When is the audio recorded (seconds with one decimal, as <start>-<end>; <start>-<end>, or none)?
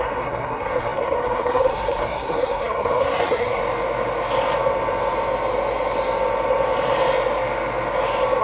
3.6-8.4